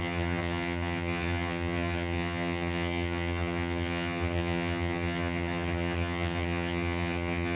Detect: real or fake fake